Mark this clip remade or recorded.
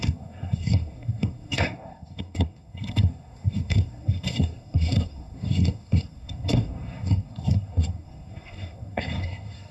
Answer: remade